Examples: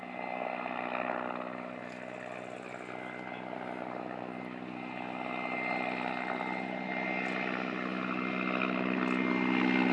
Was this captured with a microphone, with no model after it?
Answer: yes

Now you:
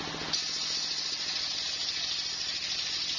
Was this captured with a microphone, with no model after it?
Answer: yes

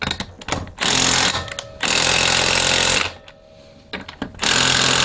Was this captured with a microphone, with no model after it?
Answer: yes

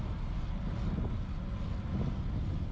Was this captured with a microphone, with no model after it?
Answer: yes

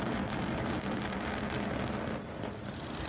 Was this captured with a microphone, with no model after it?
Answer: yes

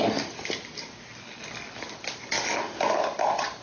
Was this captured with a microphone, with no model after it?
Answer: yes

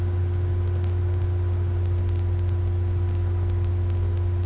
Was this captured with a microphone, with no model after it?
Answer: yes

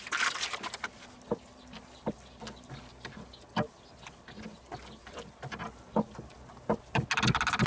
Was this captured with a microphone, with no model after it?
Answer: yes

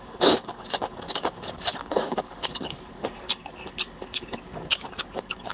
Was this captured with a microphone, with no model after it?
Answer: no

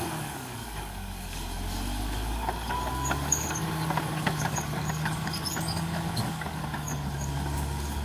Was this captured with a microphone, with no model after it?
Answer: no